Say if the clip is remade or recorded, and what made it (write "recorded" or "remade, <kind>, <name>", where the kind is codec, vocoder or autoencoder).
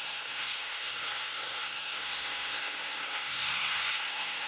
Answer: remade, codec, SNAC